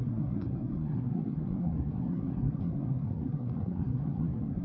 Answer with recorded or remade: remade